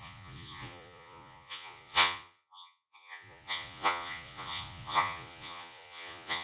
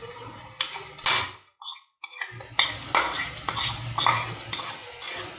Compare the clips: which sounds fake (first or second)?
first